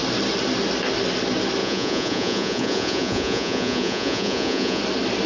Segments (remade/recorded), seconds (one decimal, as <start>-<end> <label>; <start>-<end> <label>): 0.0-1.6 recorded; 1.6-4.8 remade; 4.8-5.3 recorded